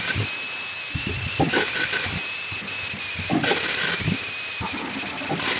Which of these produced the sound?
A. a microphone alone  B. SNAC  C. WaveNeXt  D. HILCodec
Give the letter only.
A